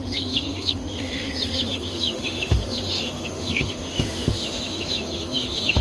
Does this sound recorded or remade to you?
remade